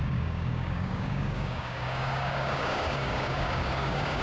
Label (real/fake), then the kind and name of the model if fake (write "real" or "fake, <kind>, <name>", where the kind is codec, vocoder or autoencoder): fake, codec, DAC